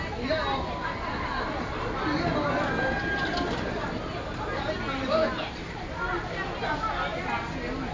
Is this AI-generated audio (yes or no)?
no